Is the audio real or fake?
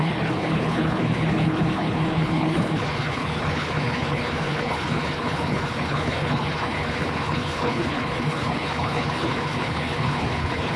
fake